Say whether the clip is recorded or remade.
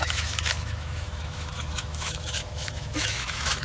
remade